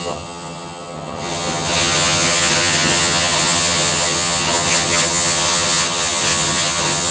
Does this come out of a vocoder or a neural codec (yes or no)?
yes